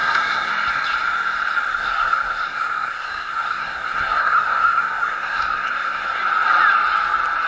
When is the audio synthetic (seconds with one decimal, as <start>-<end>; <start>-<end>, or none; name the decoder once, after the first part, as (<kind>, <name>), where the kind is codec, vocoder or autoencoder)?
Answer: 0.0-0.5 (codec, SNAC); 1.7-6.2